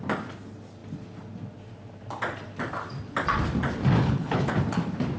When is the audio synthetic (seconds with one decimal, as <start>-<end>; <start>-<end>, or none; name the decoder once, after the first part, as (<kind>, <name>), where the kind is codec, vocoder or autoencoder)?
4.0-4.5 (codec, HILCodec)